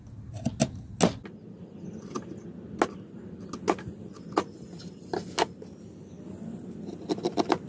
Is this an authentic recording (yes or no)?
yes